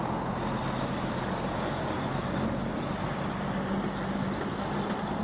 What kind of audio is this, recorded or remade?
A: recorded